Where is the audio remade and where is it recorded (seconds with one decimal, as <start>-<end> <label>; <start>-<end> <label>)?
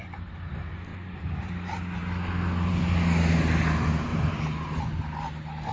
0.0-0.9 recorded; 0.9-1.5 remade; 1.5-4.1 recorded; 4.1-4.8 remade; 4.8-5.7 recorded